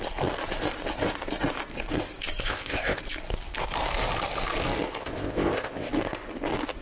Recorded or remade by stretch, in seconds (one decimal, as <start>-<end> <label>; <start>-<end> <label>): 0.0-2.4 recorded; 2.4-3.0 remade; 3.0-5.0 recorded; 5.0-5.9 remade; 5.9-6.8 recorded